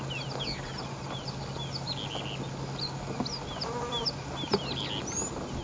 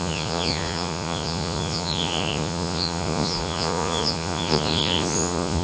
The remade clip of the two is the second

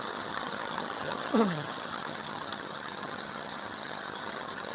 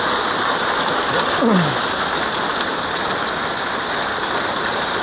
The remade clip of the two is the first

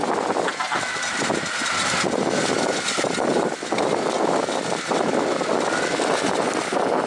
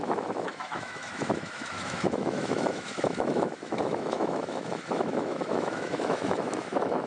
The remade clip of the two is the second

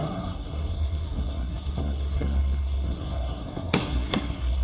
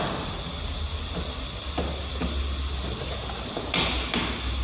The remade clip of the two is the first